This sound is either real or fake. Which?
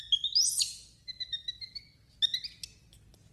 real